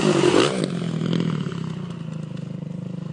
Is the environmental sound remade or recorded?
recorded